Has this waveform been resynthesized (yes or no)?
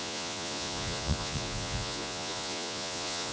yes